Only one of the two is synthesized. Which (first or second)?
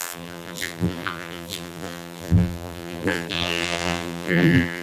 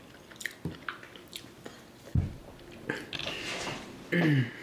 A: first